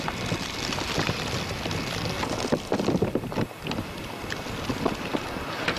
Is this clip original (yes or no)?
yes